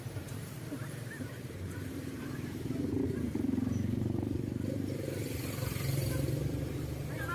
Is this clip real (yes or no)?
no